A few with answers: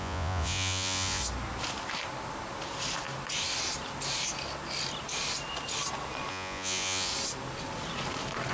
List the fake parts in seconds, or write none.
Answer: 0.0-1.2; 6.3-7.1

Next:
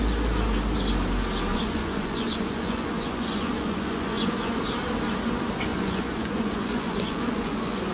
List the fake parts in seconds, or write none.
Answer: 1.5-4.6; 5.7-7.9

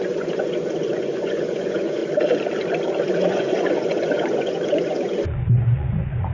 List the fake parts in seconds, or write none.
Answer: 0.0-2.0; 3.1-6.3

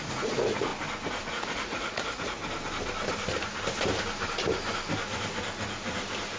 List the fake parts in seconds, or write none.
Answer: 0.0-0.7; 1.3-2.4

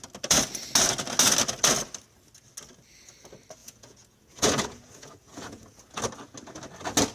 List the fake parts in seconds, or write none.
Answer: 3.6-6.0

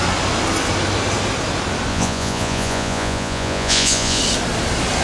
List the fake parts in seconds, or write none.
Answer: 1.9-4.2

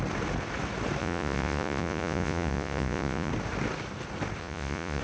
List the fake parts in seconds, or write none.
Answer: 1.0-3.3; 4.4-5.0

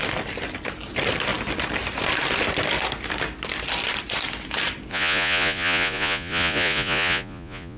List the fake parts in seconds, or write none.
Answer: 4.9-7.8